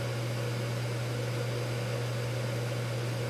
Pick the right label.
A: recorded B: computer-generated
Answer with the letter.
A